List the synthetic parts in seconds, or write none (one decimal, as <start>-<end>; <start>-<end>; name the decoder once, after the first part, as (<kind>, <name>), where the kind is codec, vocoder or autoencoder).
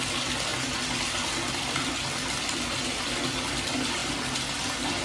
none